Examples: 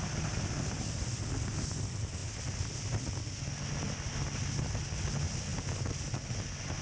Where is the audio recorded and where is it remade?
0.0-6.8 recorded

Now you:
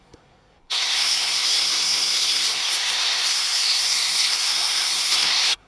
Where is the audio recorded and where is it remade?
0.0-5.7 remade

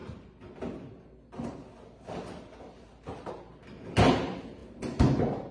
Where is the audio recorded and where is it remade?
0.0-5.5 recorded